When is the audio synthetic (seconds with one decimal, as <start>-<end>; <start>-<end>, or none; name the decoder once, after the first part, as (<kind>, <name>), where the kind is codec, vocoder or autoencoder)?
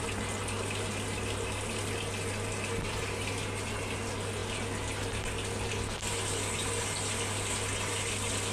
none